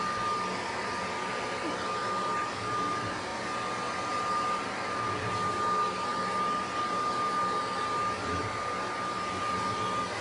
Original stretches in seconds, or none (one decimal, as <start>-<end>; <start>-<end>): 0.0-10.2